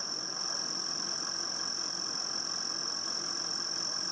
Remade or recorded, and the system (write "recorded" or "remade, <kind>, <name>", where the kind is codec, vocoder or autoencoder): remade, vocoder, BigVGAN v2